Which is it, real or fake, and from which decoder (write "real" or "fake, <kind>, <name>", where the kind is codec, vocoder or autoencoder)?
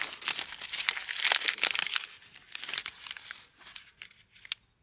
real